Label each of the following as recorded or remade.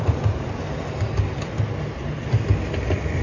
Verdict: recorded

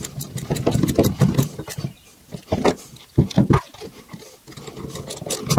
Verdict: recorded